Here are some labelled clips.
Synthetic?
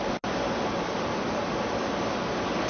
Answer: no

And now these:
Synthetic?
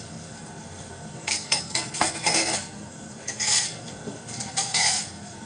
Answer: yes